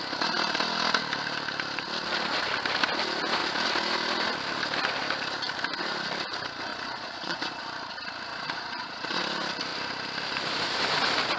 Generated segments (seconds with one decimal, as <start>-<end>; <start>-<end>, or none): 6.7-7.6; 8.3-9.2